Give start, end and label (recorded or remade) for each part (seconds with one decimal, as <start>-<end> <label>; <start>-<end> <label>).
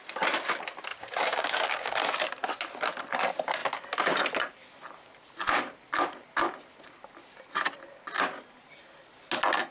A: 0.0-0.9 recorded; 0.9-2.0 remade; 2.0-9.7 recorded